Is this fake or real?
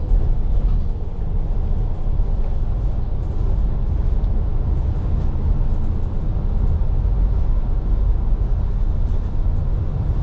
real